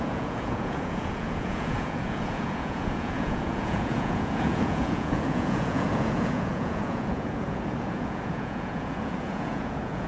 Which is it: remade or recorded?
remade